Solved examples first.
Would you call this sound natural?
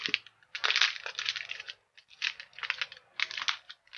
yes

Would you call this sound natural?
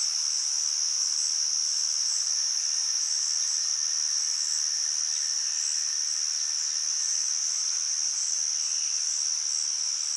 yes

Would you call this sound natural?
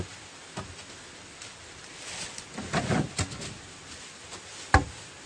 yes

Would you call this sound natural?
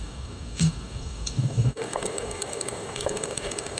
no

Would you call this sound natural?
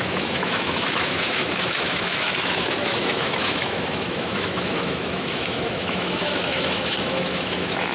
no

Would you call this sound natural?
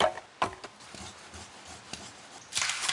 yes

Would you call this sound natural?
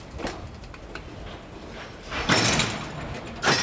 yes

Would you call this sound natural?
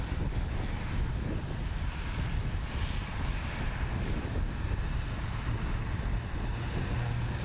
yes